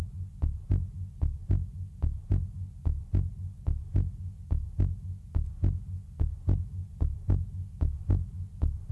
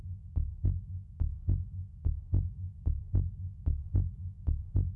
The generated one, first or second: second